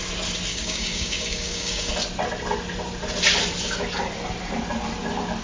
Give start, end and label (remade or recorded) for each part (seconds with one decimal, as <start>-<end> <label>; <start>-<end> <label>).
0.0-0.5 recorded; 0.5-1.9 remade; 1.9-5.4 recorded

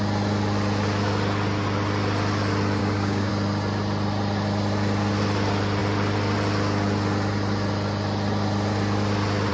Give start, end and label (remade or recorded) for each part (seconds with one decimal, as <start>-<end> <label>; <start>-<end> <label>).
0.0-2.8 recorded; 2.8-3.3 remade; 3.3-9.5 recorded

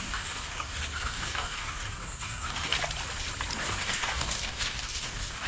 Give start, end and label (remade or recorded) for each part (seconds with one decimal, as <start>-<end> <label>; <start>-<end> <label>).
0.0-2.7 remade; 2.7-3.6 recorded; 3.6-5.5 remade

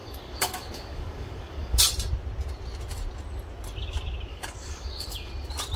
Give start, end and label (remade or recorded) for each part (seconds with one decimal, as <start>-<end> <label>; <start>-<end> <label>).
0.0-1.8 remade; 1.8-4.3 recorded; 4.3-5.3 remade; 5.3-5.8 recorded

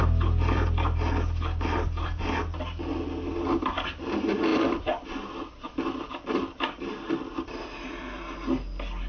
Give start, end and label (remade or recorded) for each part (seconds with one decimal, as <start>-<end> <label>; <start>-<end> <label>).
0.0-9.1 recorded

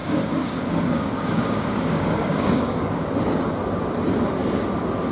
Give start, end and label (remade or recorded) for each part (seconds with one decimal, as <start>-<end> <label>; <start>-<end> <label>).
0.0-3.1 remade; 3.1-5.1 recorded

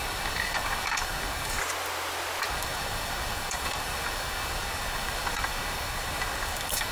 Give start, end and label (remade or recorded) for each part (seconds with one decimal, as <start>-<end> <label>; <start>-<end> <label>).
0.0-1.6 remade; 1.6-2.5 recorded; 2.5-6.9 remade